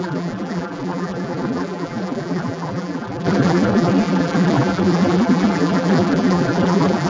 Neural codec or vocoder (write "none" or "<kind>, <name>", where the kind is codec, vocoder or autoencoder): vocoder, BigVGAN v2